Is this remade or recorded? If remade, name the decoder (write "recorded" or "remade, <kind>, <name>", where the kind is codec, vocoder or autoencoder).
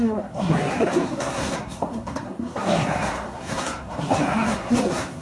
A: remade, codec, SNAC